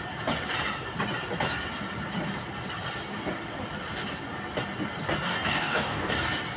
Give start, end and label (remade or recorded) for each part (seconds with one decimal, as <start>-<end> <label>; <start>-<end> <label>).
0.0-5.3 recorded; 5.3-6.1 remade; 6.1-6.6 recorded